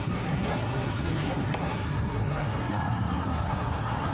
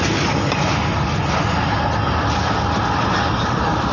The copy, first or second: first